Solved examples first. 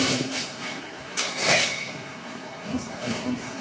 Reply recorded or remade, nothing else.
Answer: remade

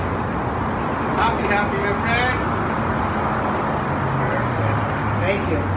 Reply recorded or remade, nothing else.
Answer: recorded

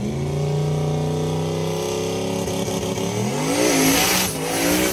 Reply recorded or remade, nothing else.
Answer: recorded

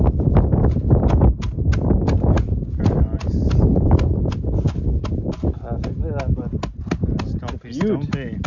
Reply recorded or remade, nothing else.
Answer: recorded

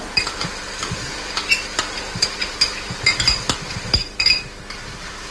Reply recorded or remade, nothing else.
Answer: recorded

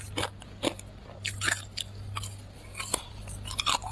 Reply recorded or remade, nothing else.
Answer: recorded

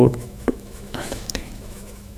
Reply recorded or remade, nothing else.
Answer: remade